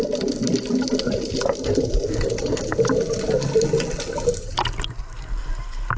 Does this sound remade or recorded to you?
recorded